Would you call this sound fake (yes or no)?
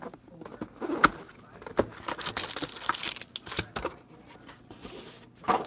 no